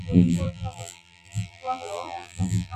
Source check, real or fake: fake